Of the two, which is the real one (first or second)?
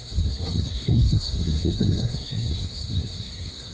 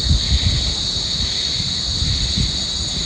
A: second